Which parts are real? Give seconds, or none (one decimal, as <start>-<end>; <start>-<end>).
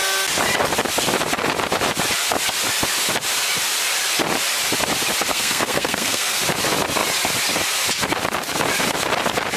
0.0-5.3; 6.4-9.6